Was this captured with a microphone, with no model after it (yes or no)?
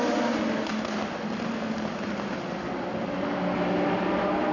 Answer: yes